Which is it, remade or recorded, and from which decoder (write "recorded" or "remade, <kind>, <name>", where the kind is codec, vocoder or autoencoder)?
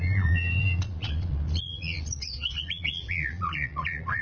remade, vocoder, Vocos